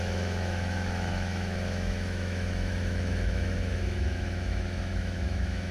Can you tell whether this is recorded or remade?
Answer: remade